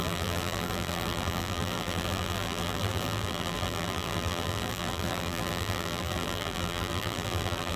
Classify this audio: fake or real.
fake